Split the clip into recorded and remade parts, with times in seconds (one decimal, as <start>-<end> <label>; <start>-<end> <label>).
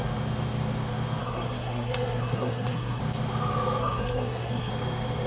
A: 0.0-1.2 recorded; 1.2-3.0 remade; 3.0-3.8 recorded; 3.8-4.7 remade; 4.7-5.3 recorded